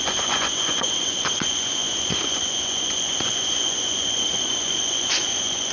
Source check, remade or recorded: remade